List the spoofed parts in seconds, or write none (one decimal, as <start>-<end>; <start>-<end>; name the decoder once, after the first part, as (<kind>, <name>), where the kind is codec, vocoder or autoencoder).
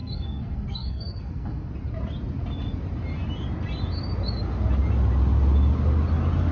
0.0-1.7 (codec, SNAC)